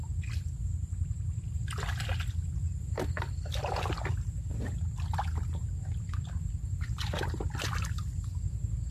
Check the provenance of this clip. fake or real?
real